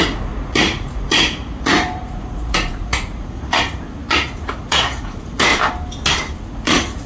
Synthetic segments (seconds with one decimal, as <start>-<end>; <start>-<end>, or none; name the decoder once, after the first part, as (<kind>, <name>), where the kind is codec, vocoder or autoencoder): 0.0-5.5 (vocoder, Vocos); 6.4-7.1

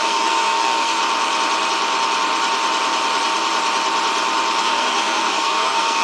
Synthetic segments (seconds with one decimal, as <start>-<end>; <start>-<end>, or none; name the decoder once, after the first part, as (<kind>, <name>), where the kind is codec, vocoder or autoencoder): 0.0-1.0 (codec, SNAC); 4.6-6.0